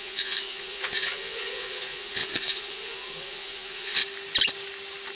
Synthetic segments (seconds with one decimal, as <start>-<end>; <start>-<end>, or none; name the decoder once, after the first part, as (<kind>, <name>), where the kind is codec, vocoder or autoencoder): 0.0-4.0 (vocoder, Vocos)